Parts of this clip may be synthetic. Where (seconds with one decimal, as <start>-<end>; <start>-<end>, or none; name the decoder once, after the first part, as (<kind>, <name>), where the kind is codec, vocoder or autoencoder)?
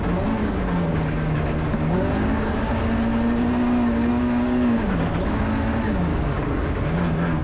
0.4-2.8 (codec, DAC); 4.1-5.4; 6.1-7.4